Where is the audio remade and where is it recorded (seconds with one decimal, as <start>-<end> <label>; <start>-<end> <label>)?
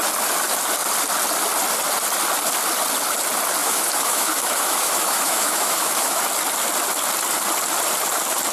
0.0-3.6 recorded; 3.6-6.2 remade; 6.2-8.5 recorded